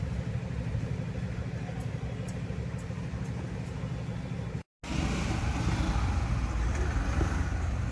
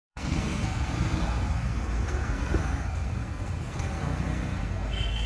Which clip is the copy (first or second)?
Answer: second